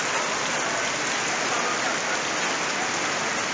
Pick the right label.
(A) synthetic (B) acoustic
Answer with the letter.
B